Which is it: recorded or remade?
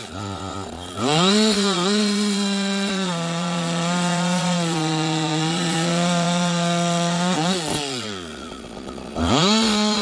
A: remade